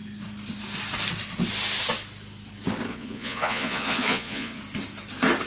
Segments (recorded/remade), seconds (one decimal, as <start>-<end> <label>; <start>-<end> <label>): 0.0-2.9 recorded; 2.9-4.6 remade; 4.6-5.5 recorded